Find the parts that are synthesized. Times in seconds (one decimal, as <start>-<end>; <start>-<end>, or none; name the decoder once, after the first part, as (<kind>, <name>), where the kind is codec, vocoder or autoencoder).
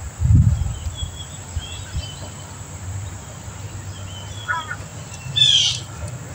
1.4-3.8 (vocoder, BigVGAN v2); 4.9-5.8